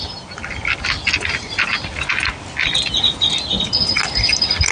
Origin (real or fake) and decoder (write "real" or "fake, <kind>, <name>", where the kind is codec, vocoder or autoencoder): real